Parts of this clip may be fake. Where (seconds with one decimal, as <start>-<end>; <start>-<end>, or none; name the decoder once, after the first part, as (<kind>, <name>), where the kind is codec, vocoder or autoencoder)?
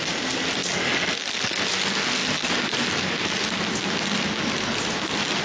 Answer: none